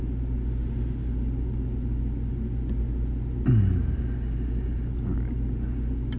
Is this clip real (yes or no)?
yes